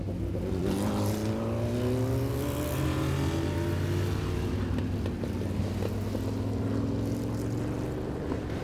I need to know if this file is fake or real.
real